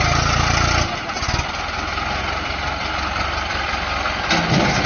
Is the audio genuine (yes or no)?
yes